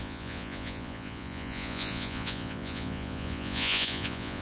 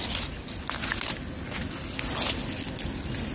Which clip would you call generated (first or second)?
first